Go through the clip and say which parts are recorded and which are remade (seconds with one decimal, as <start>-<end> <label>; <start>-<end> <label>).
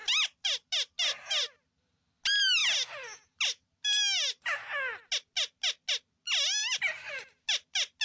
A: 0.0-8.0 recorded